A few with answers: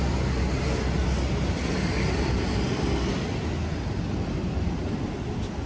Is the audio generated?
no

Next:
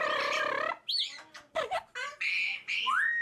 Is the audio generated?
no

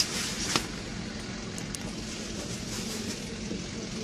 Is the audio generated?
no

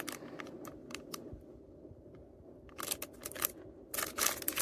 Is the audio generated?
no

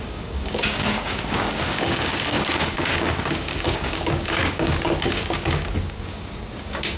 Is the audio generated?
yes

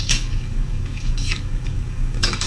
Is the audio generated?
yes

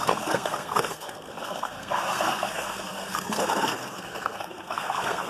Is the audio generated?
yes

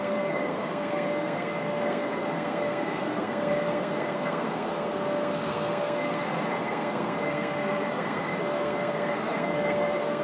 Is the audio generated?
yes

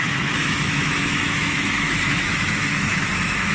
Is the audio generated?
yes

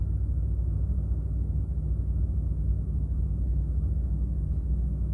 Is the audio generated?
no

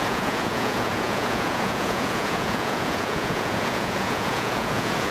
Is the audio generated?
yes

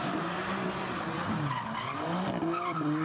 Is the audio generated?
no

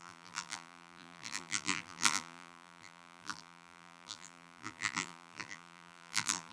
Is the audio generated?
yes